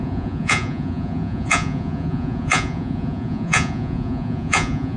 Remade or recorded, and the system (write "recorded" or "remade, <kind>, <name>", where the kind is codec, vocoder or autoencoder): remade, vocoder, Vocos